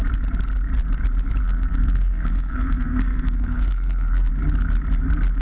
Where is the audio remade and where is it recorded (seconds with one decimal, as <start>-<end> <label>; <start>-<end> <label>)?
0.0-1.4 recorded; 1.4-4.3 remade; 4.3-5.4 recorded

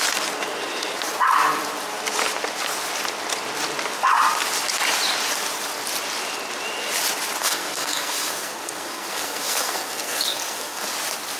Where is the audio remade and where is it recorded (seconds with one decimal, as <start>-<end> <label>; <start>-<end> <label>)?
0.0-7.4 recorded; 7.4-10.9 remade; 10.9-11.4 recorded

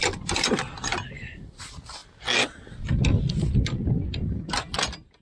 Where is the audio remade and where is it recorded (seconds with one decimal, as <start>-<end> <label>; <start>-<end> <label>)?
0.0-5.2 recorded

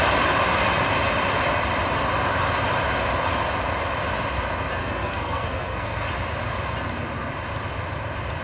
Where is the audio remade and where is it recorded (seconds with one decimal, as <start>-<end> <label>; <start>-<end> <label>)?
0.0-4.8 recorded; 4.8-6.1 remade; 6.1-8.4 recorded

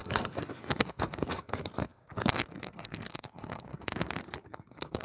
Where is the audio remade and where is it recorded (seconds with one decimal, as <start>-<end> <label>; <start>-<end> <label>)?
0.0-3.9 remade; 3.9-4.4 recorded; 4.4-5.0 remade